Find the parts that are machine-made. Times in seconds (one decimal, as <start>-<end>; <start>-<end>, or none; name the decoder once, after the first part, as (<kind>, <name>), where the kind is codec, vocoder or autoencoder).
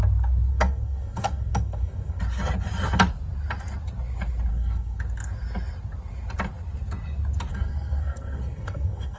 0.5-2.2 (codec, SNAC); 4.5-5.0; 7.5-9.2